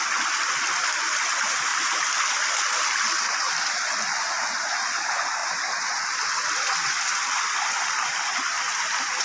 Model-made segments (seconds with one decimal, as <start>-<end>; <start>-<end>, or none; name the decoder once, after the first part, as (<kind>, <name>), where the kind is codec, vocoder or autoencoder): none